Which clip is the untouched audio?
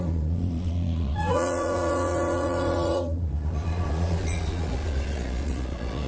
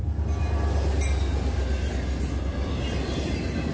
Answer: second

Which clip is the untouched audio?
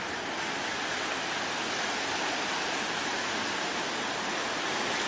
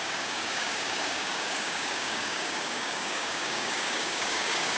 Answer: first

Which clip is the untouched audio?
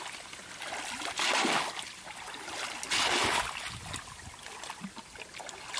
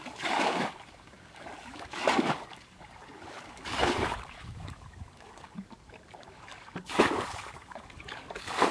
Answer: first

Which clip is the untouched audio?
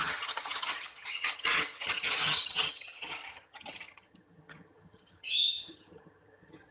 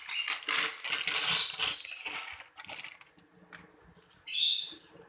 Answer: second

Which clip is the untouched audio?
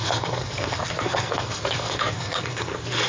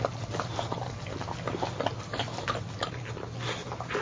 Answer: second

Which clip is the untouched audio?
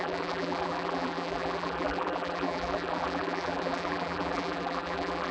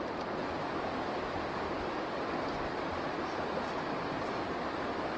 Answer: second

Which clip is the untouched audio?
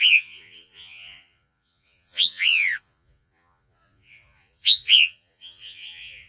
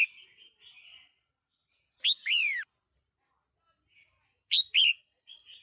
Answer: second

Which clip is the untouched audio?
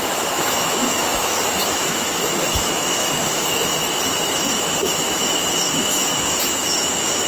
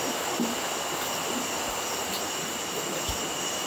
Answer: second